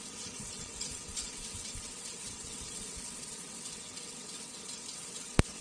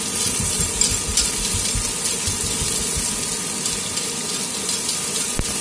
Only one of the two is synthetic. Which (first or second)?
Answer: first